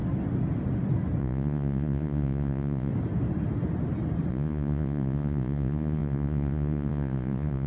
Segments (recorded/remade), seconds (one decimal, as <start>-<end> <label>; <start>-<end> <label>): 0.0-1.2 recorded; 1.2-2.9 remade; 2.9-4.3 recorded; 4.3-7.7 remade